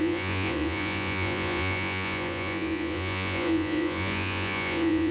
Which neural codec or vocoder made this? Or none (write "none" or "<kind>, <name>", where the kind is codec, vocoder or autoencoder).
vocoder, Vocos